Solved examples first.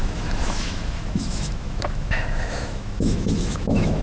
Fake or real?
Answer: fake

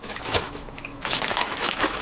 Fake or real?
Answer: fake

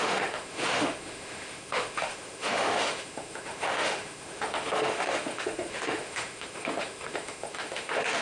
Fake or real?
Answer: fake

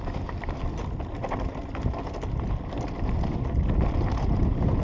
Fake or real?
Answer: real